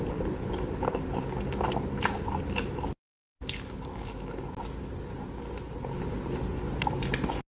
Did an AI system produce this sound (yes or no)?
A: no